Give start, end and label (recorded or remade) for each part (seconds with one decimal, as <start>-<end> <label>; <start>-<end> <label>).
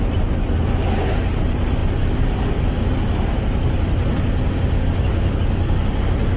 0.0-6.4 recorded